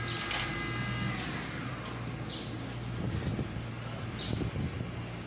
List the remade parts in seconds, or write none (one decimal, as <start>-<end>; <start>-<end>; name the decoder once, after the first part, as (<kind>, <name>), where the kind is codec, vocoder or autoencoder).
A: none